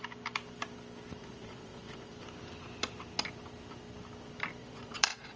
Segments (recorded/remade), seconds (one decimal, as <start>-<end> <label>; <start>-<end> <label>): 0.0-1.2 recorded; 1.2-2.1 remade; 2.1-4.6 recorded; 4.6-5.4 remade

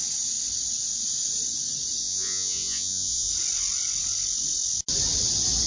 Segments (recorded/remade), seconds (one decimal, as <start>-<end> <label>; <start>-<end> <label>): 0.0-2.0 recorded; 2.0-3.3 remade; 3.3-5.7 recorded

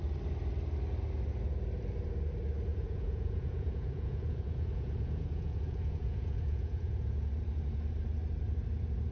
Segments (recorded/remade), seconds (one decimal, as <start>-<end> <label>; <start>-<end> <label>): 0.0-2.7 recorded; 2.7-7.3 remade; 7.3-9.1 recorded

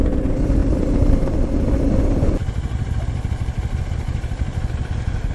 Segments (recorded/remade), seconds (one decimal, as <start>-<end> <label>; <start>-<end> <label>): 0.0-0.6 recorded; 0.6-1.5 remade; 1.5-5.3 recorded

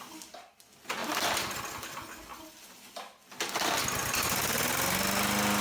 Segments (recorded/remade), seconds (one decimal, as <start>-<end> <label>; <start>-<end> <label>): 0.0-1.0 recorded; 1.0-1.6 remade; 1.6-5.6 recorded